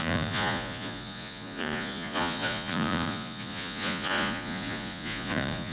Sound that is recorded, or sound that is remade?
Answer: remade